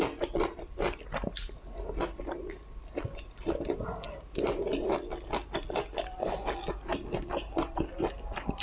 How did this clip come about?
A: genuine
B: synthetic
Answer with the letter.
A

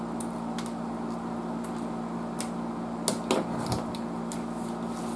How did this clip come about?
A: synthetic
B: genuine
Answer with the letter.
B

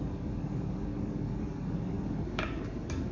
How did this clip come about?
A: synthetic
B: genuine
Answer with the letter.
A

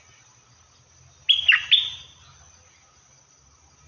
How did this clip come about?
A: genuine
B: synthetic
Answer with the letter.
A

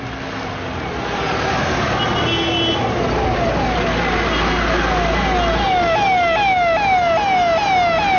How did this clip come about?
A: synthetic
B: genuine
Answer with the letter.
B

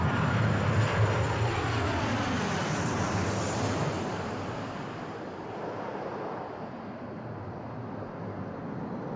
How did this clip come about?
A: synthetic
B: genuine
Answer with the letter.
B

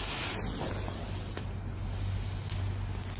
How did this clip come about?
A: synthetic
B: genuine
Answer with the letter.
B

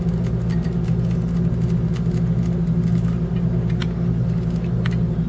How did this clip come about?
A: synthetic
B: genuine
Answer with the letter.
B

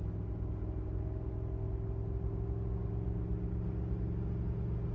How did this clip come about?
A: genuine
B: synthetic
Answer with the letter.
A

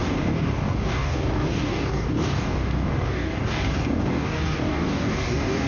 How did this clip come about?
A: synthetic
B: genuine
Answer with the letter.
A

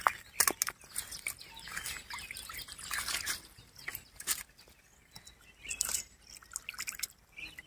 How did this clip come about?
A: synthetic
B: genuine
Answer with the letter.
B